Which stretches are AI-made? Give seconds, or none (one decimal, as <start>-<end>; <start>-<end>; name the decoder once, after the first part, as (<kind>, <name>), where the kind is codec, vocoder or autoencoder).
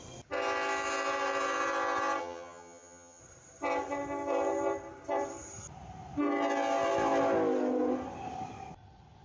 2.2-3.2 (vocoder, HiFi-GAN)